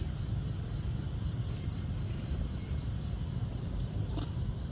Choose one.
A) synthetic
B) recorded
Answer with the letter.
B